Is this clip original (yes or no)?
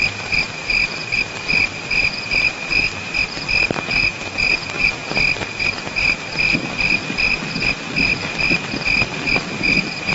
yes